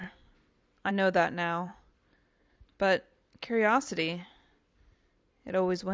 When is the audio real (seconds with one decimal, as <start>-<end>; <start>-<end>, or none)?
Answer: 0.0-5.9